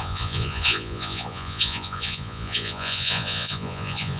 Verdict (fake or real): fake